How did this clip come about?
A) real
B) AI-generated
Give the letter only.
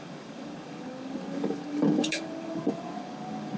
B